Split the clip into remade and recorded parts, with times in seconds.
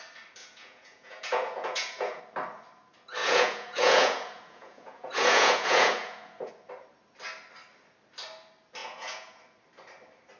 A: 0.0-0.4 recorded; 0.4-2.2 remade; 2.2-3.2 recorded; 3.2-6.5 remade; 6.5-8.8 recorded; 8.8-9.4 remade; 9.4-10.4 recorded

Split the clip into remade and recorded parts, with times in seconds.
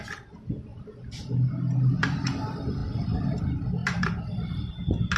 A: 0.0-0.7 recorded; 0.7-2.2 remade; 2.2-2.8 recorded; 2.8-3.4 remade; 3.4-3.8 recorded; 3.8-4.5 remade; 4.5-5.2 recorded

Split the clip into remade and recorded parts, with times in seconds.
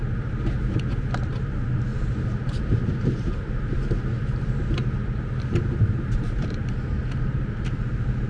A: 0.0-8.3 remade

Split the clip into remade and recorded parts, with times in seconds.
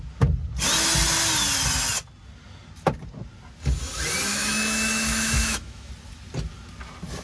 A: 0.0-4.3 recorded; 4.3-5.9 remade; 5.9-7.2 recorded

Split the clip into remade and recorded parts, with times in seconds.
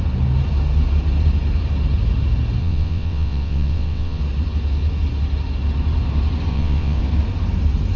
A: 0.0-2.6 recorded; 2.6-4.2 remade; 4.2-6.5 recorded; 6.5-7.0 remade; 7.0-8.0 recorded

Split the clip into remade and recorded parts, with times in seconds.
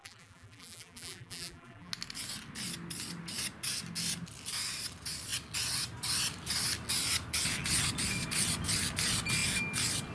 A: 0.0-1.9 remade; 1.9-10.1 recorded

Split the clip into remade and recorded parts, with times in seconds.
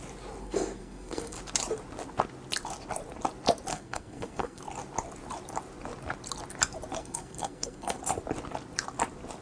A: 0.0-0.4 recorded; 0.4-1.4 remade; 1.4-3.7 recorded; 3.7-4.6 remade; 4.6-7.0 recorded; 7.0-8.0 remade; 8.0-9.4 recorded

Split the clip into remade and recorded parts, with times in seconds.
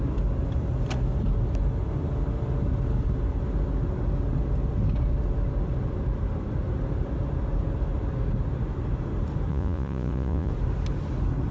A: 0.0-9.5 recorded; 9.5-10.5 remade; 10.5-11.5 recorded